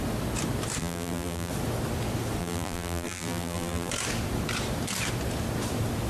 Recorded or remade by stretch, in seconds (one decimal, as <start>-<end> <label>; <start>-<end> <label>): 0.0-0.8 recorded; 0.8-1.5 remade; 1.5-2.4 recorded; 2.4-3.9 remade; 3.9-6.1 recorded